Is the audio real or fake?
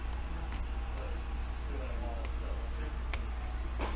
real